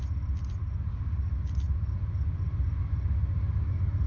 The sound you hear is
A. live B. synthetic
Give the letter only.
A